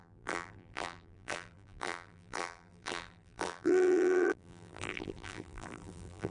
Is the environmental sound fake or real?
fake